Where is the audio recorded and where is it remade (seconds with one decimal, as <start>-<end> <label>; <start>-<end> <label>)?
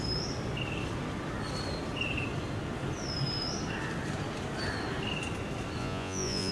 0.0-5.8 recorded; 5.8-6.5 remade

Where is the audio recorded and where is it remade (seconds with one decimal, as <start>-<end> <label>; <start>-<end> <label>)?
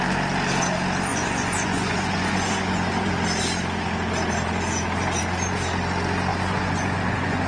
0.0-1.1 recorded; 1.1-3.1 remade; 3.1-6.3 recorded; 6.3-7.5 remade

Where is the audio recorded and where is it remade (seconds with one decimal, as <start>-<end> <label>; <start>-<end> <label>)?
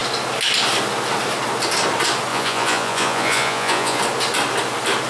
0.0-2.3 recorded; 2.3-4.0 remade; 4.0-5.1 recorded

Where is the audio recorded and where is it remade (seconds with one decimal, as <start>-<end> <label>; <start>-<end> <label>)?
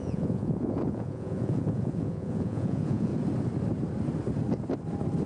0.0-3.1 remade; 3.1-5.3 recorded